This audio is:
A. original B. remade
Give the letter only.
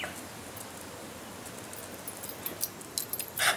A